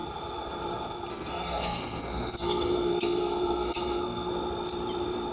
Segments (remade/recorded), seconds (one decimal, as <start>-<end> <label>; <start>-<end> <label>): 0.0-1.1 recorded; 1.1-4.3 remade; 4.3-5.3 recorded